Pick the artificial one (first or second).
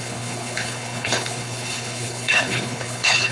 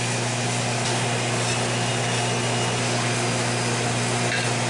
first